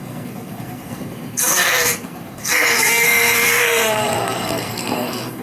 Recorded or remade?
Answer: remade